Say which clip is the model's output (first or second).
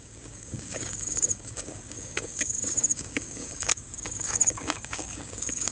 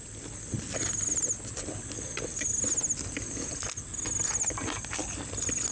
first